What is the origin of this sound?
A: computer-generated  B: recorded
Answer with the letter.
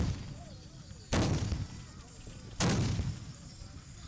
B